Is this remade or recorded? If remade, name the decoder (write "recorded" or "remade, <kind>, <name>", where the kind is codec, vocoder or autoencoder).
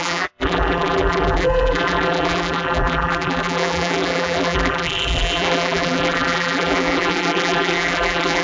remade, vocoder, BigVGAN v2